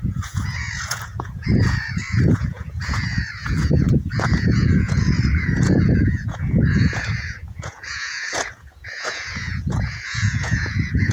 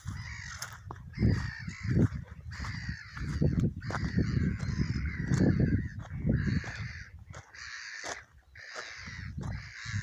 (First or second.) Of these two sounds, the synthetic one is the first